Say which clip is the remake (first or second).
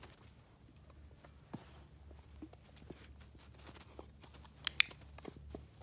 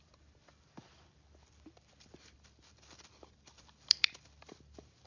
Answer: second